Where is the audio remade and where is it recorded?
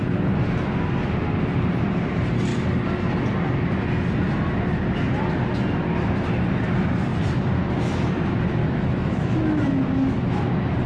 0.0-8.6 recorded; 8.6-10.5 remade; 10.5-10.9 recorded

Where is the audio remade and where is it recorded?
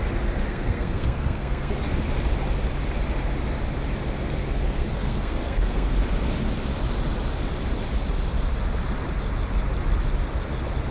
0.0-0.4 recorded; 0.4-1.7 remade; 1.7-4.4 recorded; 4.4-6.0 remade; 6.0-10.9 recorded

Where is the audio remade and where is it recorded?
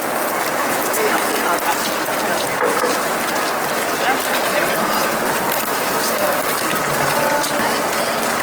0.0-0.6 recorded; 0.6-1.2 remade; 1.2-5.7 recorded; 5.7-6.4 remade; 6.4-8.4 recorded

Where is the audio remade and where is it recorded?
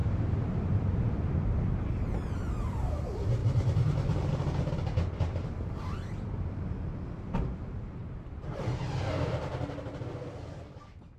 0.0-1.4 remade; 1.4-3.4 recorded; 3.4-4.7 remade; 4.7-8.0 recorded; 8.0-9.6 remade; 9.6-11.2 recorded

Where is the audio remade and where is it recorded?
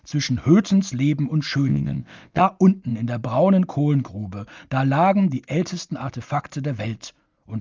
0.0-1.7 recorded; 1.7-2.4 remade; 2.4-7.6 recorded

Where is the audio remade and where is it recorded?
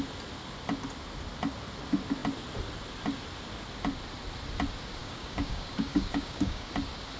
0.0-5.0 recorded; 5.0-6.7 remade; 6.7-7.2 recorded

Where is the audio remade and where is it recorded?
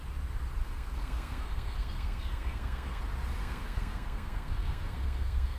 0.0-0.6 recorded; 0.6-3.0 remade; 3.0-3.4 recorded; 3.4-5.6 remade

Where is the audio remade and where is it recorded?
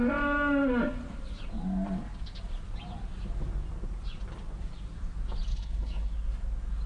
0.0-5.5 recorded; 5.5-6.1 remade; 6.1-6.9 recorded